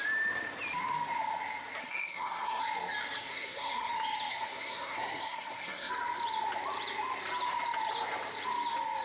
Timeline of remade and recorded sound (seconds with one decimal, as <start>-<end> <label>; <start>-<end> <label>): 0.0-1.8 recorded; 1.8-2.6 remade; 2.6-3.3 recorded; 3.3-3.9 remade; 3.9-4.3 recorded; 4.3-5.9 remade; 5.9-9.0 recorded

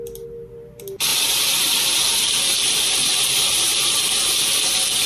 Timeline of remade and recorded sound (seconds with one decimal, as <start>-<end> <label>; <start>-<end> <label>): 0.0-1.1 recorded; 1.1-4.0 remade; 4.0-5.1 recorded

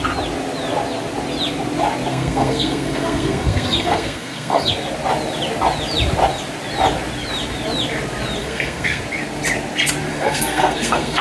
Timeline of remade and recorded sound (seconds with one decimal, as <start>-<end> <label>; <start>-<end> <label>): 0.0-2.1 recorded; 2.1-4.7 remade; 4.7-8.4 recorded; 8.4-9.0 remade; 9.0-10.1 recorded; 10.1-11.2 remade

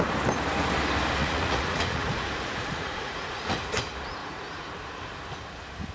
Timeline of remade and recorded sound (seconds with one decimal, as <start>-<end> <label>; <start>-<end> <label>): 0.0-1.2 recorded; 1.2-3.7 remade; 3.7-4.2 recorded; 4.2-4.7 remade; 4.7-5.9 recorded

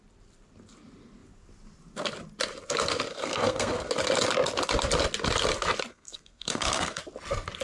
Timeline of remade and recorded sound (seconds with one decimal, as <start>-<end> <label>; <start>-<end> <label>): 0.0-3.1 recorded; 3.1-3.9 remade; 3.9-5.9 recorded; 5.9-7.0 remade; 7.0-7.6 recorded

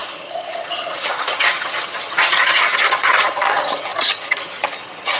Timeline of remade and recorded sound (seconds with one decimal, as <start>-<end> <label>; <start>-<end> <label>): 0.0-5.2 remade